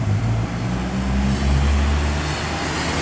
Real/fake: real